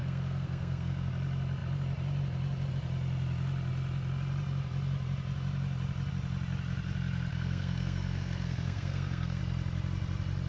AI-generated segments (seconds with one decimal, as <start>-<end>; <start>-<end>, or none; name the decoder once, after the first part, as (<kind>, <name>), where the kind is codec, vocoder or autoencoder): 0.0-1.1 (codec, SNAC); 7.3-9.4